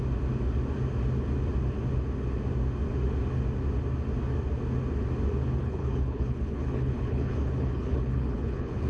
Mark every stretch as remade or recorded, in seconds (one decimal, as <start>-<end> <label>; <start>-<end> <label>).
0.0-5.6 recorded; 5.6-8.9 remade